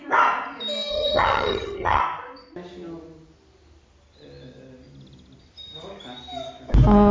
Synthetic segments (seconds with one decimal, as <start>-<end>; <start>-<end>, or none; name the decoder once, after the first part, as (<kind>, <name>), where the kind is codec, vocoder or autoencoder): 0.9-2.0 (vocoder, HiFi-GAN)